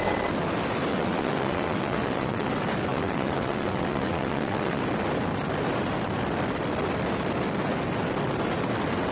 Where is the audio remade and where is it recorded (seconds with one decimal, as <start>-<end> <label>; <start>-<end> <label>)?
0.0-0.9 recorded; 0.9-2.5 remade; 2.5-2.9 recorded; 2.9-4.8 remade; 4.8-9.1 recorded